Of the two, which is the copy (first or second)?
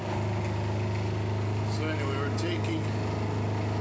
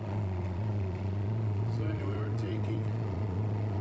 second